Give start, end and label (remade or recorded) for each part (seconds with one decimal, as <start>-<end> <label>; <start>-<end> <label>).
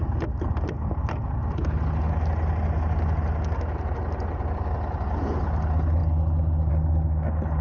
0.0-7.6 recorded